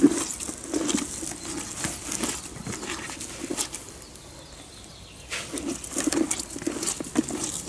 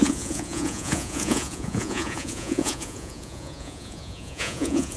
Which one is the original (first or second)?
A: first